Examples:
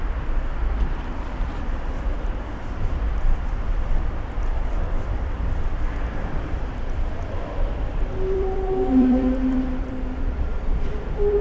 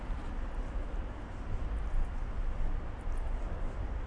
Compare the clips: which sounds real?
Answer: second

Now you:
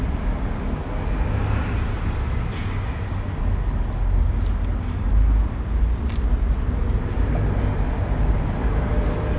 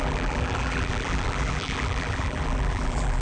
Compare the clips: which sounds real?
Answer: first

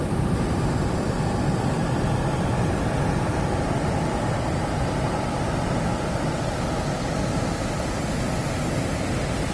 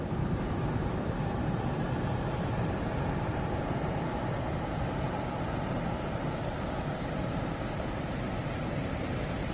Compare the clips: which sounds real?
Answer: first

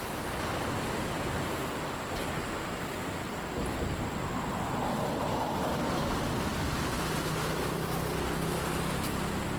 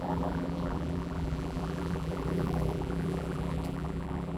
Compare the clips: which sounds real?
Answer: first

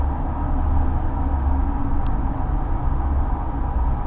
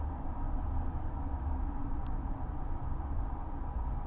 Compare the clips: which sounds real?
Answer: first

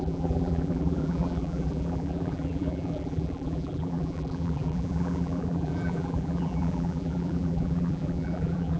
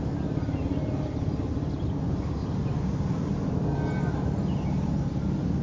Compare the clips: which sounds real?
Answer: second